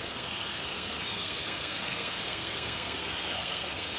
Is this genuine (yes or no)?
no